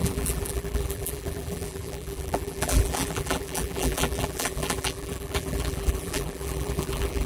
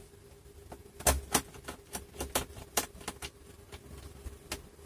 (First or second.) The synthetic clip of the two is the first